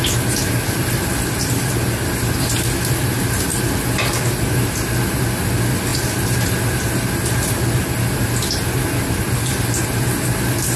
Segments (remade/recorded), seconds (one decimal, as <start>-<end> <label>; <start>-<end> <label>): 0.0-10.8 recorded